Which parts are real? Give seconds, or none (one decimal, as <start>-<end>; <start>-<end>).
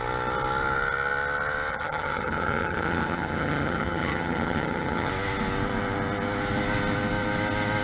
0.0-1.7; 5.1-7.8